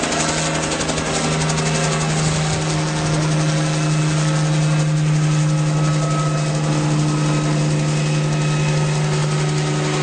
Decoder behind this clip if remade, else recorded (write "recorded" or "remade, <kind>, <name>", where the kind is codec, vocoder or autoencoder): recorded